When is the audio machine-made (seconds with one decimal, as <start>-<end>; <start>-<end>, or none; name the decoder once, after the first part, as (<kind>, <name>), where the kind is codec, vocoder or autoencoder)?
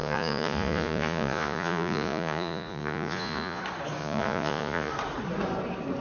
0.0-3.6 (vocoder, Vocos); 4.0-4.9